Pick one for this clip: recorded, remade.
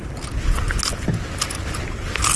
recorded